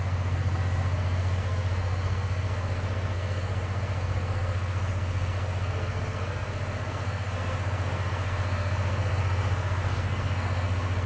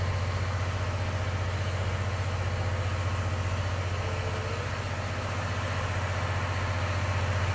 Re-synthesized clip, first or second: first